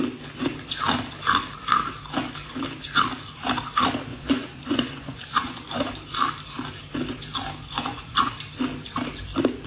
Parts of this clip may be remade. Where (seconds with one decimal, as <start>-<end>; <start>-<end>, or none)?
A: 4.1-5.7; 7.8-8.3